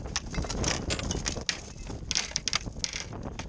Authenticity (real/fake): real